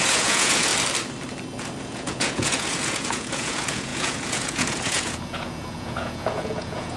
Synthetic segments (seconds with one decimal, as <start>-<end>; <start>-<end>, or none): 0.0-0.7; 1.8-7.0